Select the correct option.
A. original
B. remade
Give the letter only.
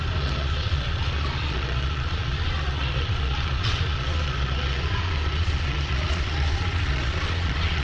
B